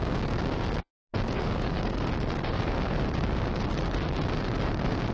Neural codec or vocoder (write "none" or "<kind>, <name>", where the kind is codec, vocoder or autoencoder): codec, DAC